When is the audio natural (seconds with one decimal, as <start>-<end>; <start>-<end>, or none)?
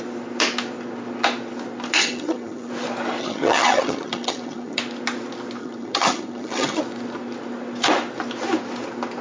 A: 0.0-2.0; 2.7-3.2; 4.8-5.6; 6.8-9.2